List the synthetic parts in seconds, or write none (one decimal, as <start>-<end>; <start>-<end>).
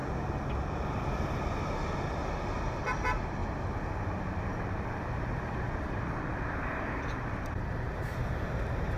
2.7-3.4; 4.2-9.0